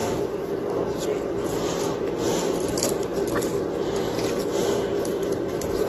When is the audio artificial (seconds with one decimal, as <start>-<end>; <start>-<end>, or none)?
0.0-3.1; 5.5-5.9